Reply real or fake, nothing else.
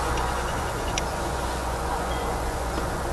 fake